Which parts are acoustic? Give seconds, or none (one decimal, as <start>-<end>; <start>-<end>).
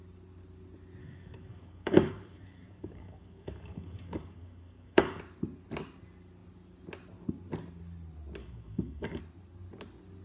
0.0-1.0; 5.2-8.4; 9.2-10.2